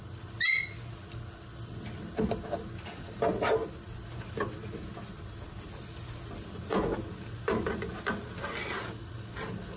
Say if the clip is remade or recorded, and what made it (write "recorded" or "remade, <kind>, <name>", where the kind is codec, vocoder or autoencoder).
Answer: recorded